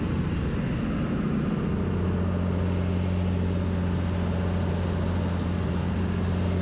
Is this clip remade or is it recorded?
recorded